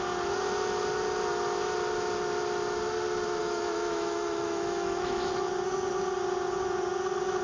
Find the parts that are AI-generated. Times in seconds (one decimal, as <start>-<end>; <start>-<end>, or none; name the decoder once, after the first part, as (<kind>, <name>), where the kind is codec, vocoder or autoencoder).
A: 3.4-5.3 (autoencoder, DAC-VAE)